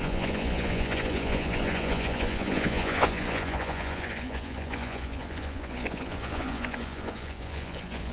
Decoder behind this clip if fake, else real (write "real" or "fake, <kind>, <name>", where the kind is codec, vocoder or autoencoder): fake, vocoder, Vocos